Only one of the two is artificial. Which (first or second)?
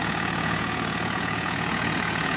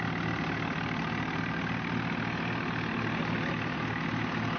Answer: first